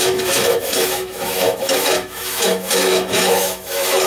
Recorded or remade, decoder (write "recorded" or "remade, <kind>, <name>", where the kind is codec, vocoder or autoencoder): remade, autoencoder, DAC-VAE